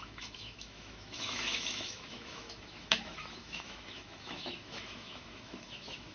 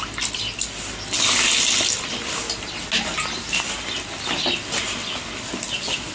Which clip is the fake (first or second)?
first